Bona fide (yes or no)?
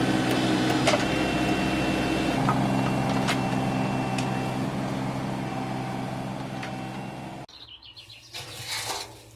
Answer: yes